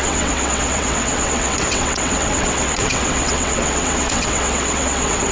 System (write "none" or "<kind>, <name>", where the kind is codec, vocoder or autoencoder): vocoder, WaveNeXt